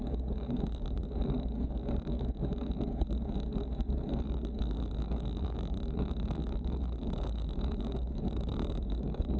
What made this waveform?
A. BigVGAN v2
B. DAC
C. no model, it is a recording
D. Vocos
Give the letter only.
B